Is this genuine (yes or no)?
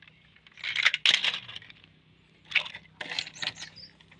yes